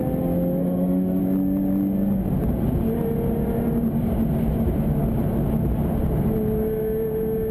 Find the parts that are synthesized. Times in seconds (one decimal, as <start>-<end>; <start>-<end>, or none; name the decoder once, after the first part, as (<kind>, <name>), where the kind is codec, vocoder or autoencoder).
0.6-1.2 (autoencoder, DAC-VAE)